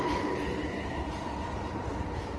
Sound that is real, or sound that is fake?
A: fake